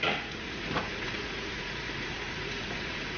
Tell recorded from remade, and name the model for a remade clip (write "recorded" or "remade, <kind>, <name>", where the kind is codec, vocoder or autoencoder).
remade, vocoder, Vocos